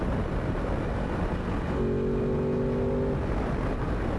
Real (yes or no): yes